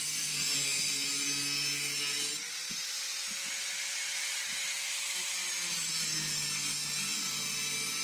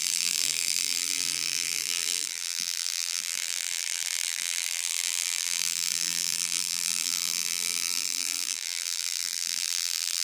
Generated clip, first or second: second